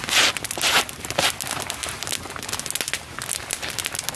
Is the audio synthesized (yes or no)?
no